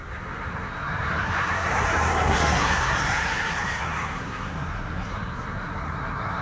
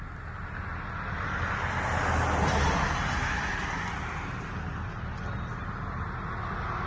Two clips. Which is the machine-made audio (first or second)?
first